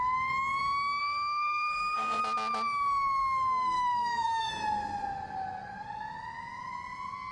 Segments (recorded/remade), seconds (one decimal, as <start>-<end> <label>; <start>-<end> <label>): 0.0-1.0 recorded; 1.0-2.2 remade; 2.2-3.2 recorded; 3.2-4.5 remade; 4.5-7.3 recorded